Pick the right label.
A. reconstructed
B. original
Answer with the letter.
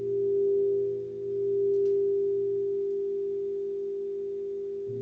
B